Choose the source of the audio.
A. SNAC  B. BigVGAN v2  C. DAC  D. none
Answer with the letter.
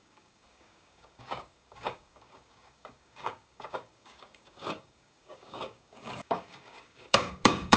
C